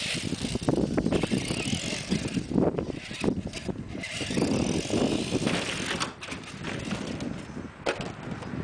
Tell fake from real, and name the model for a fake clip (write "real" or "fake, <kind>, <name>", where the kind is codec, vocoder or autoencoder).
real